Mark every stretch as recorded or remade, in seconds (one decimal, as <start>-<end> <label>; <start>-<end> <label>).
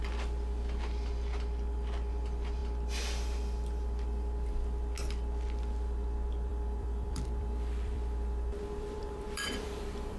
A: 0.0-6.5 recorded; 6.5-10.2 remade